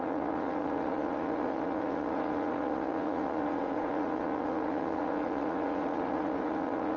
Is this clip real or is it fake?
fake